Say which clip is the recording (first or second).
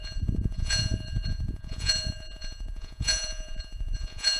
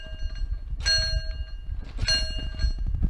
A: second